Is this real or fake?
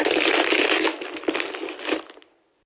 real